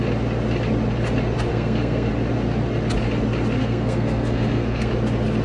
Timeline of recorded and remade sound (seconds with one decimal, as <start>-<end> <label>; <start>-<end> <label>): 0.0-1.5 recorded; 1.5-2.1 remade; 2.1-3.6 recorded; 3.6-4.9 remade; 4.9-5.4 recorded